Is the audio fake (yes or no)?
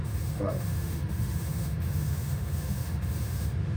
yes